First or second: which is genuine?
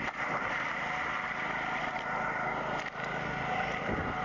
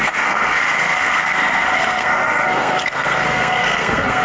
first